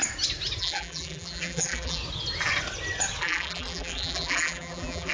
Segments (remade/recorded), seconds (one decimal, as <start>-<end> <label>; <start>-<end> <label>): 0.0-0.6 recorded; 0.6-2.0 remade; 2.0-3.2 recorded; 3.2-5.1 remade